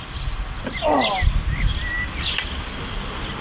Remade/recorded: recorded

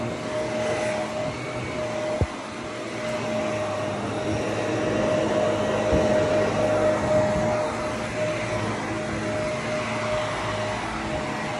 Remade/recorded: recorded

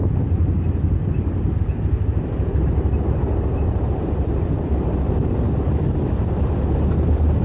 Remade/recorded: remade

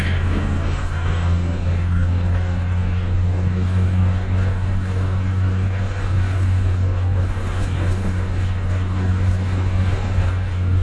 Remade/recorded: remade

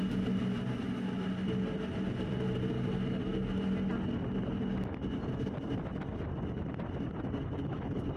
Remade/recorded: recorded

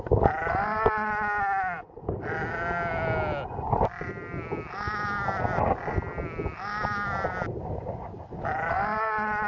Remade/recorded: recorded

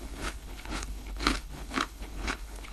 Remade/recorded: remade